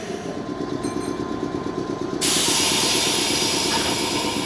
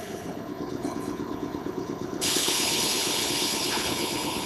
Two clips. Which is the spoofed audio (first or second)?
second